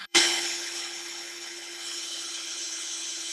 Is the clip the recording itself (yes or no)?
no